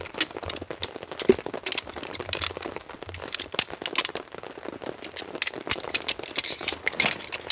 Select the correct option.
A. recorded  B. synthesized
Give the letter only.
A